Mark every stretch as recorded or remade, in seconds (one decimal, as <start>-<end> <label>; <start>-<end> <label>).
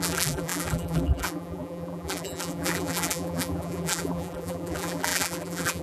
0.0-5.8 remade